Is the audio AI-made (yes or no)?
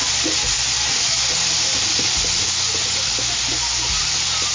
no